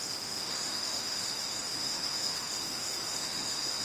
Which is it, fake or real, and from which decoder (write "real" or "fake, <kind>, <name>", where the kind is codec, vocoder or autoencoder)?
fake, autoencoder, DAC-VAE